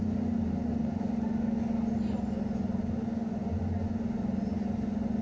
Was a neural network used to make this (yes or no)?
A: no